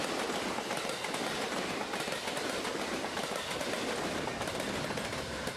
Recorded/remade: recorded